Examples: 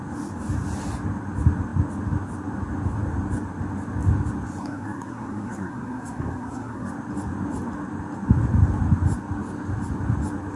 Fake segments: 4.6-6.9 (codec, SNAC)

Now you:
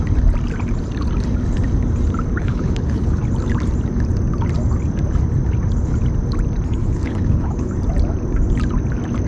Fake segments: 2.4-3.2 (codec, HILCodec); 6.8-7.7

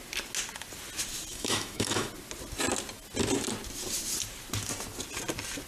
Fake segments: 1.3-2.1 (autoencoder, DAC-VAE)

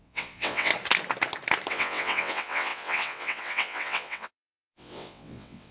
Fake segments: 0.0-0.7 (vocoder, WaveNeXt); 1.7-5.7